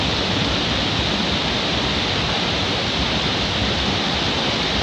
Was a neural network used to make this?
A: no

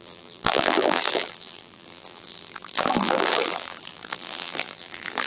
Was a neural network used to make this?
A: yes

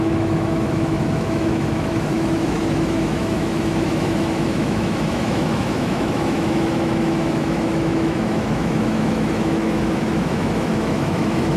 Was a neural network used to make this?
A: yes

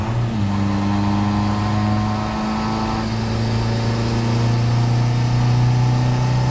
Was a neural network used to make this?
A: no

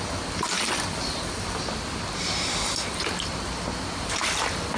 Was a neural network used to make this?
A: no